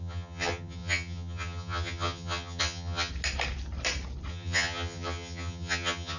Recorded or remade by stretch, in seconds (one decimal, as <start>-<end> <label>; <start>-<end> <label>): 0.0-3.1 remade; 3.1-4.3 recorded; 4.3-6.2 remade